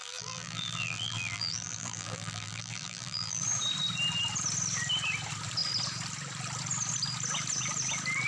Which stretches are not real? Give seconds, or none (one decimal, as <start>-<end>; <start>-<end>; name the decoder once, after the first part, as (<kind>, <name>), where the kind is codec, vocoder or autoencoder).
0.0-3.4 (vocoder, BigVGAN v2)